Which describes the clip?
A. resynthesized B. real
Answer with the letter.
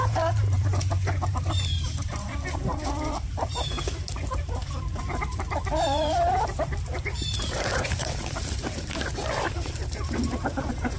A